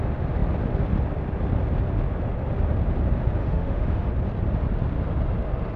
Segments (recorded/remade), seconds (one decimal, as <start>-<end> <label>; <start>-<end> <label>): 0.0-3.4 recorded; 3.4-4.1 remade; 4.1-5.8 recorded